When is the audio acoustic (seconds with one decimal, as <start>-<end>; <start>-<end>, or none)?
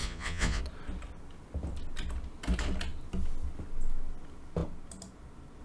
0.6-5.6